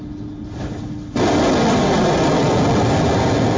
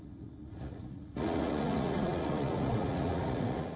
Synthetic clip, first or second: second